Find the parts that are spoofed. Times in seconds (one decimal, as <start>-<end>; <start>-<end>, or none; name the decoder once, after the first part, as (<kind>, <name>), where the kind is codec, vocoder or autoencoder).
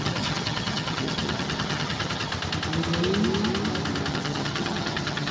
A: 0.0-2.3 (vocoder, HiFi-GAN); 4.1-5.3